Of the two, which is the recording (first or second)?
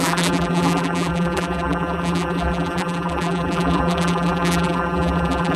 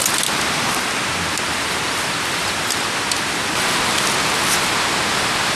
second